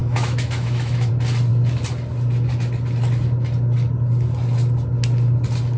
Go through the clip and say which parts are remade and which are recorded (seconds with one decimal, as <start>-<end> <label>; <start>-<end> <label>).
0.0-1.1 remade; 1.1-5.8 recorded